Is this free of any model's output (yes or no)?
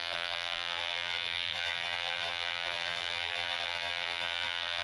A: no